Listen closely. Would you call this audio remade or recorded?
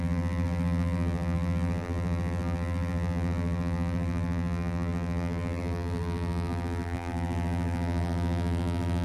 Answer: remade